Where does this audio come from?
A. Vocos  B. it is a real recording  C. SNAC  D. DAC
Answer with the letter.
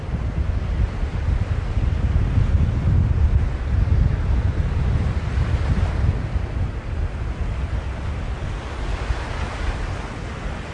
B